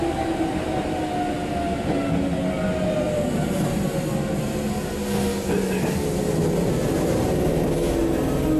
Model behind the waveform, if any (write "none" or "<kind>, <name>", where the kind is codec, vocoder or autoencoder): none